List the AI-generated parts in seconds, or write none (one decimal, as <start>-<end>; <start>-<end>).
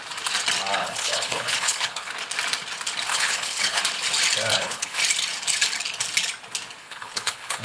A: 0.8-2.1; 3.1-3.8; 4.5-5.0; 6.8-7.6